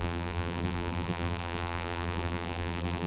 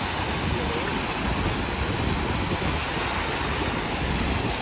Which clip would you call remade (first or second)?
first